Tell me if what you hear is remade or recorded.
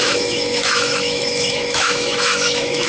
remade